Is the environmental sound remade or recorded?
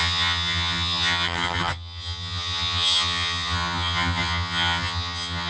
remade